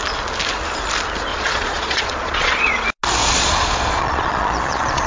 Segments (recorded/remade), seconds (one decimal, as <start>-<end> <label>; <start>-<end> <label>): 0.0-1.3 recorded; 1.3-2.8 remade; 2.8-3.2 recorded; 3.2-5.1 remade